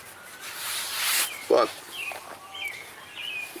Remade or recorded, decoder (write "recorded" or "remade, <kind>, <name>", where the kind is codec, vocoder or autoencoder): recorded